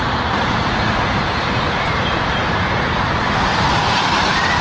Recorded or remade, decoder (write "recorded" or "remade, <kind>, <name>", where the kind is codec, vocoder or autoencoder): remade, vocoder, Vocos